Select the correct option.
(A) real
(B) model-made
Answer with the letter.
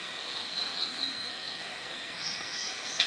B